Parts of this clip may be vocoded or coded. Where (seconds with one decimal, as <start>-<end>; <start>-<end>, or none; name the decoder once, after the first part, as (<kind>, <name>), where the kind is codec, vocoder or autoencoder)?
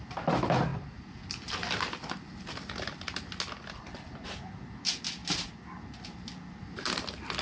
none